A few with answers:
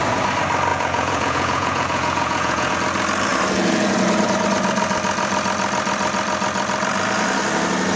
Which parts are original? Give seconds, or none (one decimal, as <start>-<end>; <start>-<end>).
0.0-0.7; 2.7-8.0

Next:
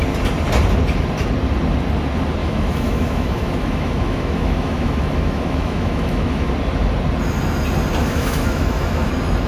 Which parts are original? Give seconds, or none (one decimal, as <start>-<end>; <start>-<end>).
0.0-2.4; 6.5-8.0; 9.1-9.5

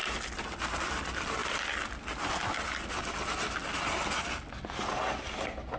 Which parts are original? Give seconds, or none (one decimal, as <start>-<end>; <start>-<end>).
0.0-5.8

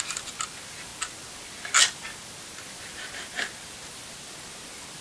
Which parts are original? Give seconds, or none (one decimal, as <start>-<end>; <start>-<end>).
0.0-5.0

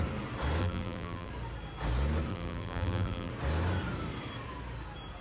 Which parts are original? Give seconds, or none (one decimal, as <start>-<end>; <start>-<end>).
0.0-0.6; 1.3-2.3; 3.3-5.2

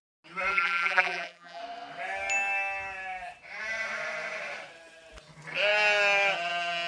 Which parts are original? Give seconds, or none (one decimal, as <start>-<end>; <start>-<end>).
0.0-0.5; 1.6-6.9

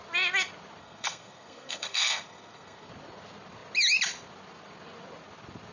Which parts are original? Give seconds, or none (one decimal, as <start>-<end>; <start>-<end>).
0.0-0.8; 2.9-5.7